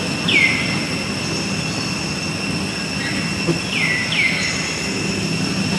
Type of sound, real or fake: real